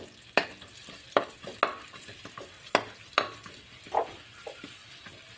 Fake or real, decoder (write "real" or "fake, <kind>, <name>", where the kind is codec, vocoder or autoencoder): real